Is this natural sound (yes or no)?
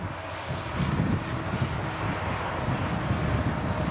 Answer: yes